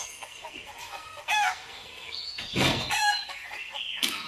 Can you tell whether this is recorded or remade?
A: remade